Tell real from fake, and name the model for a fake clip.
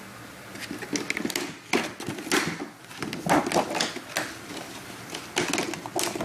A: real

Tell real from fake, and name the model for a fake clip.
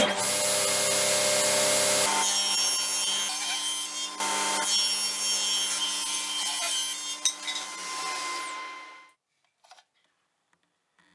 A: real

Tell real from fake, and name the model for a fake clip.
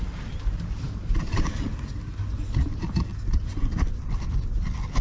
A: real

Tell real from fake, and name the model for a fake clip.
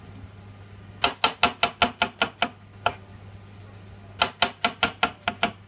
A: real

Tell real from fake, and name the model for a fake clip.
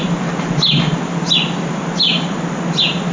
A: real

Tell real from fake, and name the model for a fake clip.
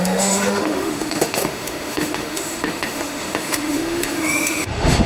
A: fake, autoencoder, DAC-VAE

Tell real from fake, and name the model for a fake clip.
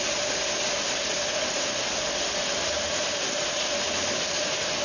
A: real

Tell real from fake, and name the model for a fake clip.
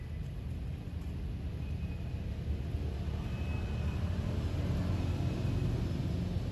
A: real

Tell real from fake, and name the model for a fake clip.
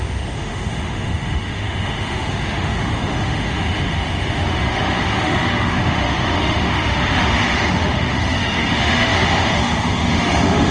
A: fake, autoencoder, DAC-VAE